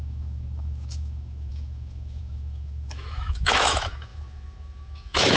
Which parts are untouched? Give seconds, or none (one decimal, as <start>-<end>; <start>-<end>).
none